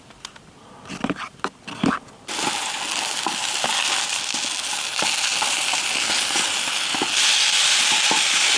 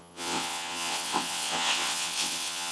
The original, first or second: first